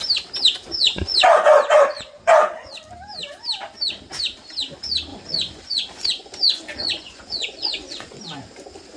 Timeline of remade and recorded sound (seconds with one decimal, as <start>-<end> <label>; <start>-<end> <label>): 0.0-0.8 recorded; 0.8-2.7 remade; 2.7-5.1 recorded; 5.1-8.2 remade; 8.2-9.0 recorded